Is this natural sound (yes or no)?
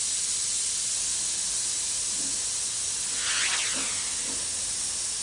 yes